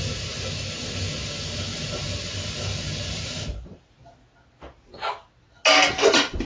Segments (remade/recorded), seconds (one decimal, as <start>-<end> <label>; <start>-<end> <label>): 0.0-6.4 recorded